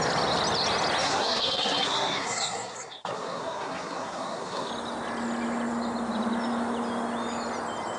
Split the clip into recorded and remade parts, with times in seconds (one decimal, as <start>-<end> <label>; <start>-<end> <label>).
0.0-1.0 recorded; 1.0-4.7 remade; 4.7-8.0 recorded